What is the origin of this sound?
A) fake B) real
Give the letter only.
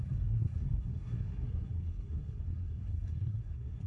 A